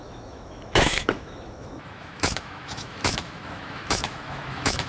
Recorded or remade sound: remade